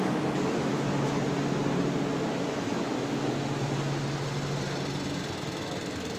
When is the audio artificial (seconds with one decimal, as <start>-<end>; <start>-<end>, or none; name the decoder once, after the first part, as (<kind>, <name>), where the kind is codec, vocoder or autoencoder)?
0.0-0.7 (autoencoder, DAC-VAE); 2.4-2.9; 5.3-6.2